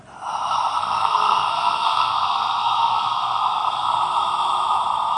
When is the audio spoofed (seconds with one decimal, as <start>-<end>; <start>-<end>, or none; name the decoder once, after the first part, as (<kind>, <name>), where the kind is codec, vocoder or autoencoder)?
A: 0.8-3.9 (codec, SNAC)